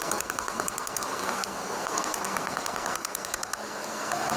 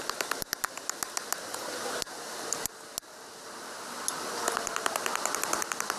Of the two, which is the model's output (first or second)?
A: first